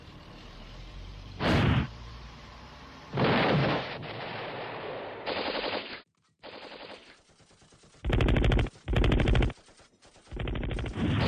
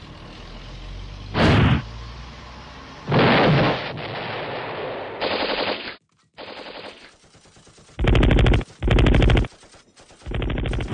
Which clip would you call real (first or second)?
second